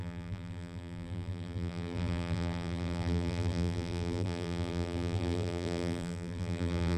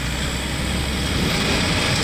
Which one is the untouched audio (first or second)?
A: second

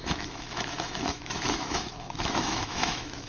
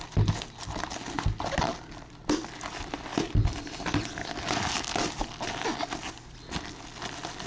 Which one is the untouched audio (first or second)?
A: second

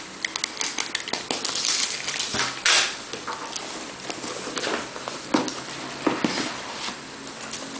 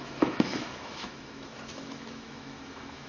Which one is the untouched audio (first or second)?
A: first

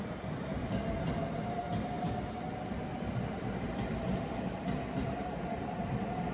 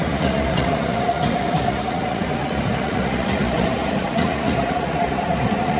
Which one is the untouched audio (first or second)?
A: first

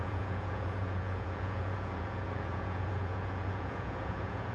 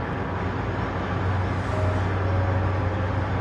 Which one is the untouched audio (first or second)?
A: second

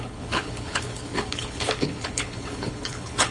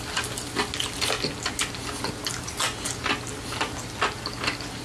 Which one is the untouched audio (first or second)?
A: second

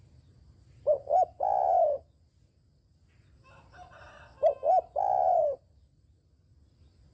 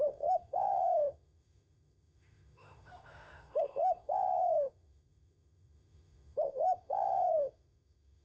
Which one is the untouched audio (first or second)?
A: first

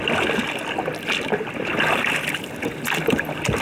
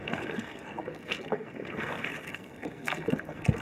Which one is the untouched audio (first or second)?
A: first